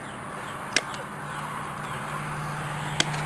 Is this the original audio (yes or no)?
yes